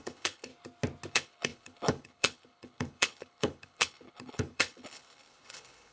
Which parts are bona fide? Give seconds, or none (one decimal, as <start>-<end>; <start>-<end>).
0.5-1.1